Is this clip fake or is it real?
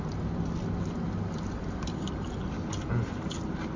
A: real